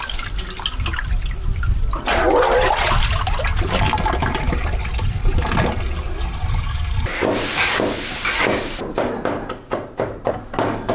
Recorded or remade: recorded